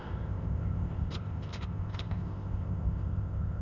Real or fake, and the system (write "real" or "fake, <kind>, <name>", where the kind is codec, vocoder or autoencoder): fake, codec, ZipCodec